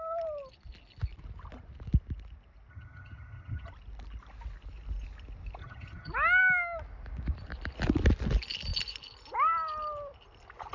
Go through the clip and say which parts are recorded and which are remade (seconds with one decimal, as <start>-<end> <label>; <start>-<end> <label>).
0.0-2.7 recorded; 2.7-3.7 remade; 3.7-5.6 recorded; 5.6-6.1 remade; 6.1-10.7 recorded